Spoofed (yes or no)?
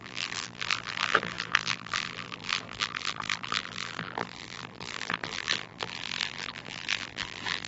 yes